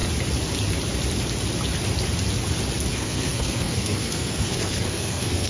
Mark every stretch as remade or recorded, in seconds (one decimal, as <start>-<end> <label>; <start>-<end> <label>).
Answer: 0.0-2.9 recorded; 2.9-5.5 remade